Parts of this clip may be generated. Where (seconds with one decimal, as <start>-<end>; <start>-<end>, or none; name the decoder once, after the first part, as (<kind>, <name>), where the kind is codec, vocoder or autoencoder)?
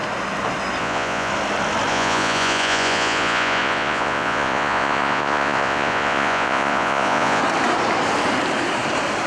0.8-1.3 (vocoder, Vocos); 1.9-7.4